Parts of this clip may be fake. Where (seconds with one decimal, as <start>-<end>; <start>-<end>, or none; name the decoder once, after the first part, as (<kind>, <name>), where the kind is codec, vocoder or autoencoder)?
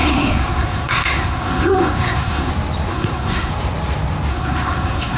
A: 0.0-2.5 (codec, SNAC); 2.9-3.5; 4.3-5.2